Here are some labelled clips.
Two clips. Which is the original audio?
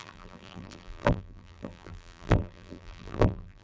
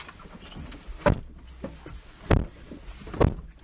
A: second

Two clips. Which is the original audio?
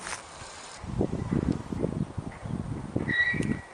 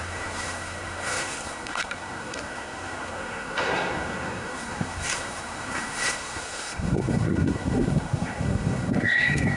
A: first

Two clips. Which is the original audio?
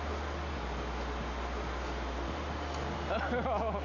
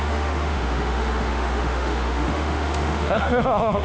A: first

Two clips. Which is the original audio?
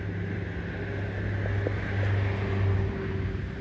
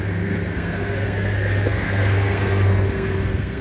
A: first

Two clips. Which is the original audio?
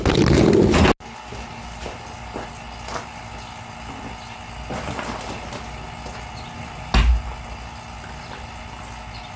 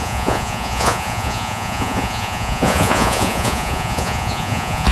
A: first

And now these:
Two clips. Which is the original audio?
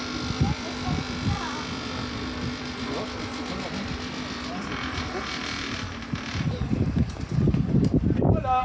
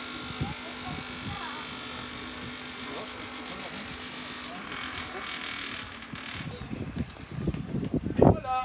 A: second